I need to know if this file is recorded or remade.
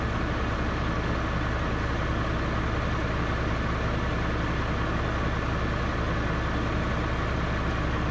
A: recorded